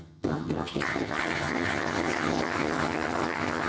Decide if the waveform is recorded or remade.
remade